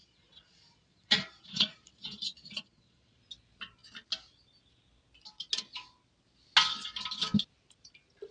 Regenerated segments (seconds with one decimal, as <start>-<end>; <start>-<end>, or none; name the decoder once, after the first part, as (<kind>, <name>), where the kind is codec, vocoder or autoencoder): 0.0-3.2 (vocoder, Vocos)